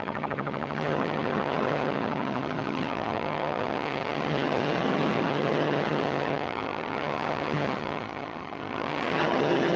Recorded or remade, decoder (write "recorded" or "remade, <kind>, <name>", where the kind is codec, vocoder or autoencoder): remade, vocoder, HiFi-GAN